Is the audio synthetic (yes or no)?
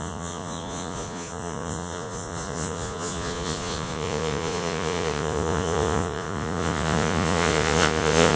yes